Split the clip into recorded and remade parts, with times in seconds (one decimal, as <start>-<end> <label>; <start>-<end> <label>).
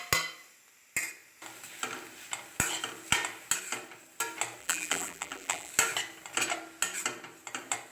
0.0-4.6 recorded; 4.6-5.7 remade; 5.7-7.9 recorded